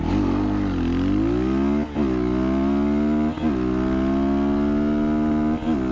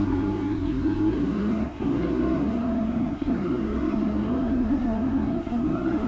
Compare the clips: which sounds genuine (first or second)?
first